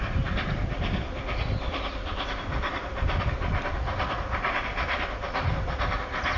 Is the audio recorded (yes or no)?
no